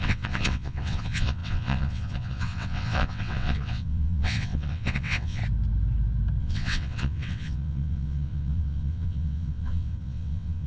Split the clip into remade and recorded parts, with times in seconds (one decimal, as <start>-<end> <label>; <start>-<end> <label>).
0.0-5.4 remade; 5.4-6.4 recorded; 6.4-10.7 remade